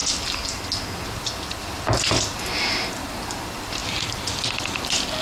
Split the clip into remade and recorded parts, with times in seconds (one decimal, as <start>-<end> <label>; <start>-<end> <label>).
0.0-5.2 recorded